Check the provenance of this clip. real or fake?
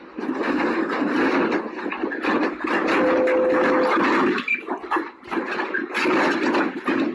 real